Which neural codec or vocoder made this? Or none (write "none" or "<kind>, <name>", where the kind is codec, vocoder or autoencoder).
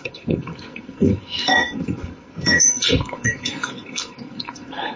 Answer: codec, SNAC